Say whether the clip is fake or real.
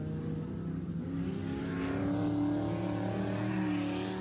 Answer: real